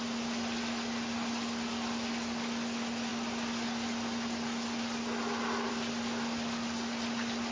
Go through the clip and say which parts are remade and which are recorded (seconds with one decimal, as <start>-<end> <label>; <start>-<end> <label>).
0.0-7.5 recorded